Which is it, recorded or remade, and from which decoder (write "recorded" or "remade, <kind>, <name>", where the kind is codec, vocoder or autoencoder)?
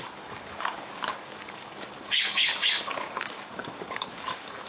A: remade, codec, DAC